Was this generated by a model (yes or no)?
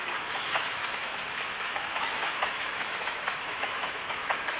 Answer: yes